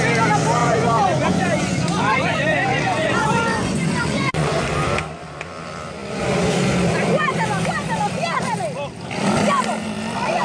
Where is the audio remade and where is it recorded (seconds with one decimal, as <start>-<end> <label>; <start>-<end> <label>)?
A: 0.0-0.6 recorded; 0.6-4.6 remade; 4.6-10.4 recorded